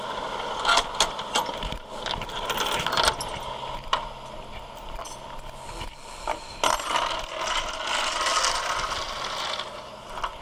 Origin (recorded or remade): recorded